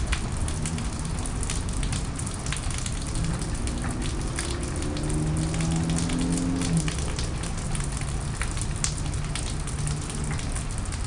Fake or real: real